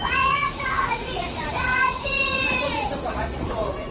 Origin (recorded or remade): remade